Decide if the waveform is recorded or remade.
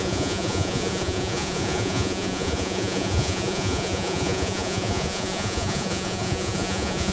remade